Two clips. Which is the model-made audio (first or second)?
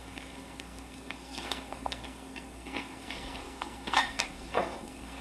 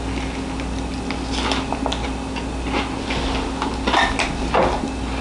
first